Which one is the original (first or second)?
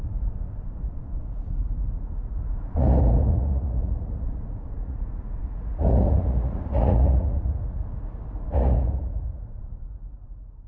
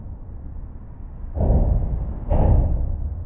second